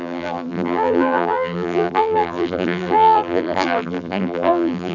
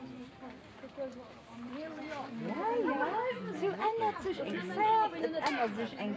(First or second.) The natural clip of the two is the second